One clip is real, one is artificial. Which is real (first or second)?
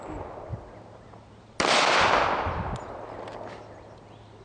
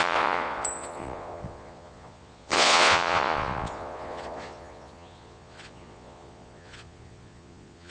first